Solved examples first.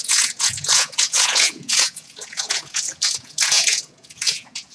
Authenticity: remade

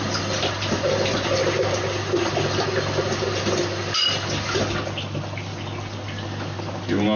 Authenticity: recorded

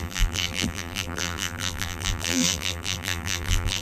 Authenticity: remade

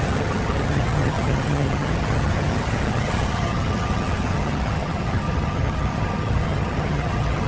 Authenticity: remade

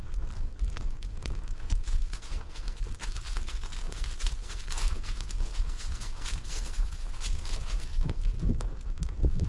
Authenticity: remade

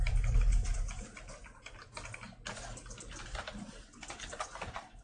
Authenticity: recorded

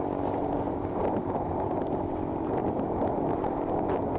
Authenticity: remade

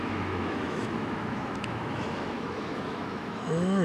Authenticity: remade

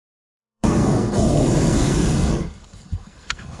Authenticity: remade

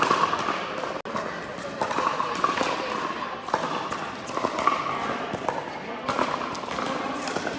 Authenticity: recorded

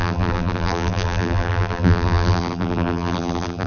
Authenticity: remade